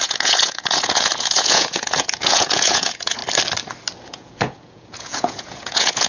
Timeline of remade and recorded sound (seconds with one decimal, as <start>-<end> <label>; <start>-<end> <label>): 0.0-3.2 remade; 3.2-4.1 recorded; 4.1-6.1 remade